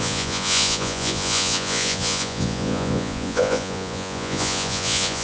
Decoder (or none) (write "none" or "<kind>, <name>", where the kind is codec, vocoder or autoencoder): vocoder, Vocos